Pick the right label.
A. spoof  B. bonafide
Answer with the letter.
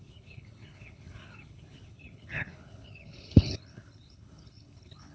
A